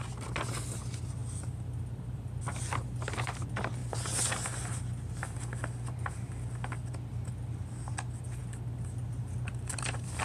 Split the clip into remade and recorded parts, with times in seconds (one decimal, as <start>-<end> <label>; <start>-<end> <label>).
0.0-1.2 recorded; 1.2-2.4 remade; 2.4-10.2 recorded